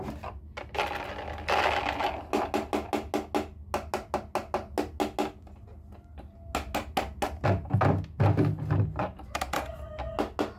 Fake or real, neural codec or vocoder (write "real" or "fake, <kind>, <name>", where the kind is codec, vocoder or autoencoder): real